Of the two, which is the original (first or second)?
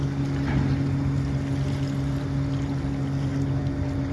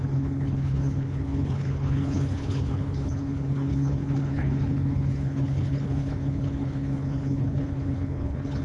first